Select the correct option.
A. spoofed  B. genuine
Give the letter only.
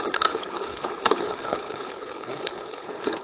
A